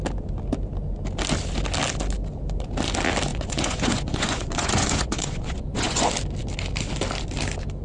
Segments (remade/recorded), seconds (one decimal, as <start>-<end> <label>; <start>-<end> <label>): 0.0-3.3 recorded; 3.3-6.1 remade; 6.1-7.8 recorded